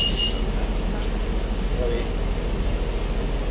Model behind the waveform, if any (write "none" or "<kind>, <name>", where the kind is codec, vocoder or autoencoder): none